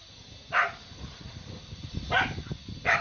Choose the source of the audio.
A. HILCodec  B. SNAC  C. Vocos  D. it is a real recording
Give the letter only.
D